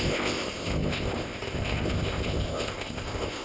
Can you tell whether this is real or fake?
fake